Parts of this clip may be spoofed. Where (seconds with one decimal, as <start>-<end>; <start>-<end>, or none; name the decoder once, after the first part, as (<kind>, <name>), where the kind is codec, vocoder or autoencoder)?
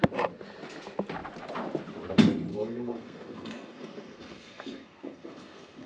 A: 2.5-5.9 (codec, SNAC)